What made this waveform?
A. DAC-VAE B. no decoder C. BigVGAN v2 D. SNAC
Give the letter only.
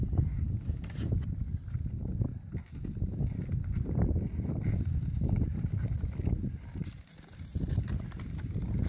B